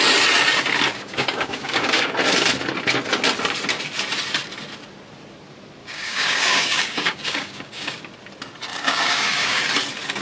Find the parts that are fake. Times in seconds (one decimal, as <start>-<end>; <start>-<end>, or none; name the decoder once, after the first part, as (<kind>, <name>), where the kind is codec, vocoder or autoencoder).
0.9-2.1 (codec, DAC); 5.8-8.0; 8.7-9.6